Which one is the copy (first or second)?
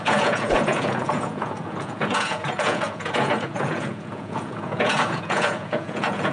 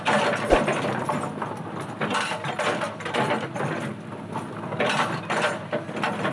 first